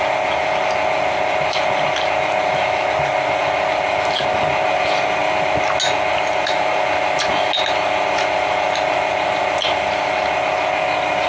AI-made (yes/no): no